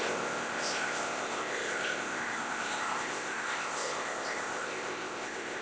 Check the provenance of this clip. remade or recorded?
remade